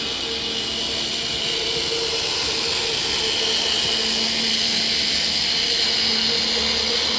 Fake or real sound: real